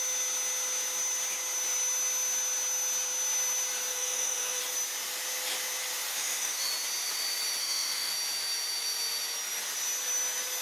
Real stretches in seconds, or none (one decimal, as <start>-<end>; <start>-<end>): 0.0-3.9; 4.6-6.1; 6.7-7.6; 8.1-10.6